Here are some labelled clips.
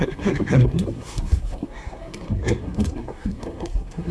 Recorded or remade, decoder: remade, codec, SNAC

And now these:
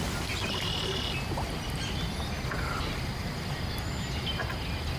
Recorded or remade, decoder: recorded